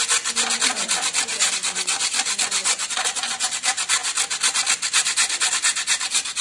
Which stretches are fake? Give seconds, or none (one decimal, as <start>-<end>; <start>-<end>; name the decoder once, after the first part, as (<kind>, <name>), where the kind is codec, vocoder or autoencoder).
2.6-3.5 (vocoder, Vocos)